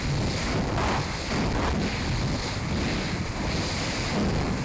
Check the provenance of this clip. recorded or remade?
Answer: recorded